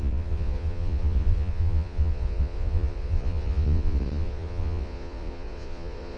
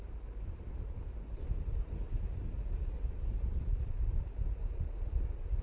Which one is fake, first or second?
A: first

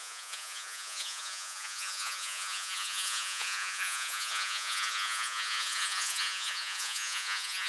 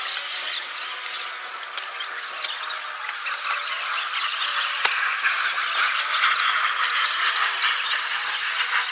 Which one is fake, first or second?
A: first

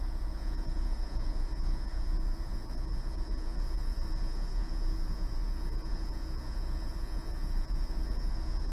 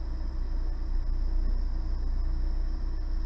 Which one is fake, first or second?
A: first